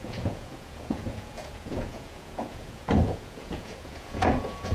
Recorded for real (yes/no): no